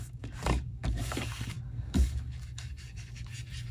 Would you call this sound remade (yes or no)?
yes